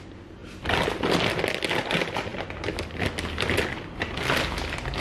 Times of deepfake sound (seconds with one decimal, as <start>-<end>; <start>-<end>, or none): none